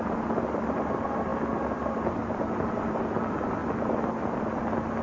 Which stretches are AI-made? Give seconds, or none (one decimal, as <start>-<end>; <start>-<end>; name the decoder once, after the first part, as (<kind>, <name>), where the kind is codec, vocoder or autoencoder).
0.0-1.3 (vocoder, BigVGAN v2); 2.0-3.6; 4.2-5.0